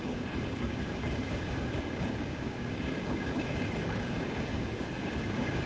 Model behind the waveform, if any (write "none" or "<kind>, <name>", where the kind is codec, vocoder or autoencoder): codec, DAC